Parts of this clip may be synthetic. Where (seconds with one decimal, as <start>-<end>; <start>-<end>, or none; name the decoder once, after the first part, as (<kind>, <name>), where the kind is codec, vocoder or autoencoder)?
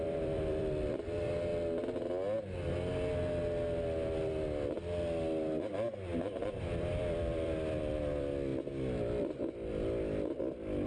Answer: 0.0-1.5 (vocoder, BigVGAN v2); 6.6-8.5; 10.4-10.9